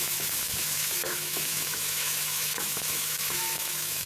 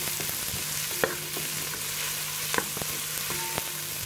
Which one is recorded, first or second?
second